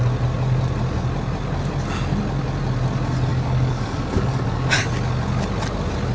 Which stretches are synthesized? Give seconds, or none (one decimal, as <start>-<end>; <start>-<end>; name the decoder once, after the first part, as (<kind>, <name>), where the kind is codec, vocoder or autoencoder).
3.3-4.7 (codec, DAC)